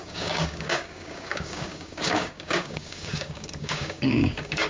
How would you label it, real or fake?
fake